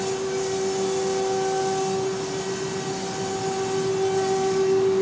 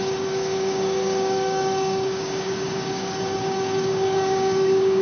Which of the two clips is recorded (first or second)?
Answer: first